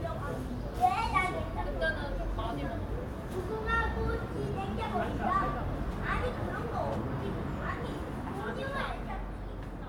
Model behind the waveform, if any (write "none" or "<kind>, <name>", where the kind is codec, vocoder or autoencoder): none